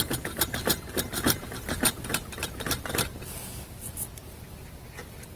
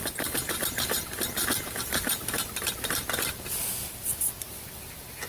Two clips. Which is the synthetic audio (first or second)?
second